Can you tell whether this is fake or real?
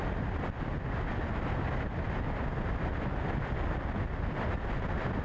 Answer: real